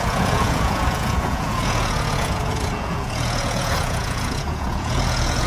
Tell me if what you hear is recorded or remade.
remade